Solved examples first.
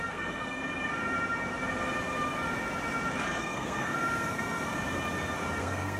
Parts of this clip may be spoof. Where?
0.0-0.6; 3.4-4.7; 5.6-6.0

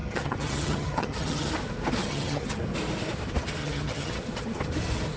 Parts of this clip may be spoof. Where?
0.0-1.5; 2.0-2.6; 3.6-4.2

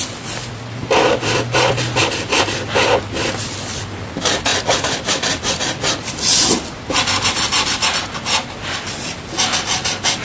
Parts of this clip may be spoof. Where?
none

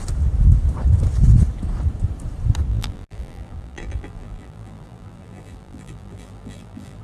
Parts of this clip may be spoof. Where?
2.7-7.0